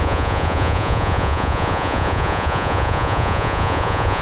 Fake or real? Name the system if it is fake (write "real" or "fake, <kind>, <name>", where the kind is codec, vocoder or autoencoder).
fake, vocoder, Vocos